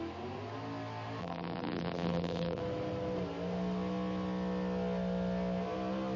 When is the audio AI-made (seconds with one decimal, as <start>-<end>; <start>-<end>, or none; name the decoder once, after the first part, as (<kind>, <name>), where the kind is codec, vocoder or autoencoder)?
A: 1.2-2.6 (vocoder, BigVGAN v2)